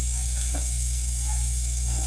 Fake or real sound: fake